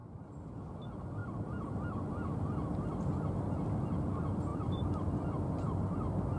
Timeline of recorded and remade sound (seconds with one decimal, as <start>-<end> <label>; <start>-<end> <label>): 0.0-0.7 remade; 0.7-1.2 recorded; 1.2-1.7 remade; 1.7-4.5 recorded; 4.5-6.4 remade